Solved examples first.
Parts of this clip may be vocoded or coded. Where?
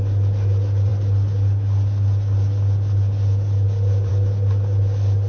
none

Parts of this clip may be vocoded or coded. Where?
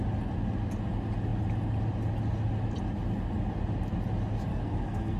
4.5-5.2 (codec, SNAC)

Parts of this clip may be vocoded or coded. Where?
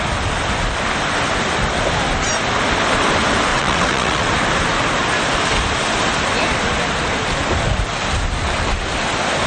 3.5-4.3 (vocoder, WaveNeXt)